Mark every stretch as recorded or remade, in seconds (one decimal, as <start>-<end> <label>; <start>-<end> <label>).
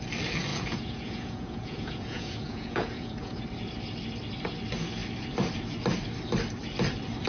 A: 0.0-0.5 recorded; 0.5-3.4 remade; 3.4-7.3 recorded